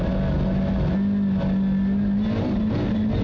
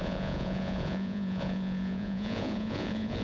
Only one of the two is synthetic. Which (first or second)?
second